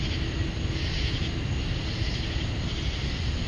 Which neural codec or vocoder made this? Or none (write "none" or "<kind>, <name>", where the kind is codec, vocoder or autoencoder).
none